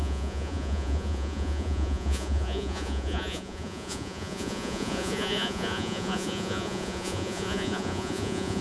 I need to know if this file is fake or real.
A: fake